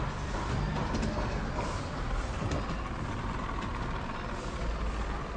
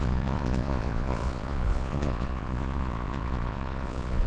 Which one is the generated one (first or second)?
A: second